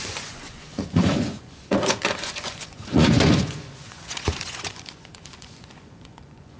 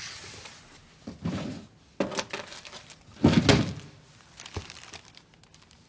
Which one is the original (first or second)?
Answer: second